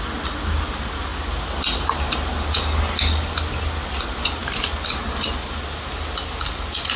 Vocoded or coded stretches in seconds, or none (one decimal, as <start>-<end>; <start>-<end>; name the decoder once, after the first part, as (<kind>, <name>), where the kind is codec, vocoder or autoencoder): none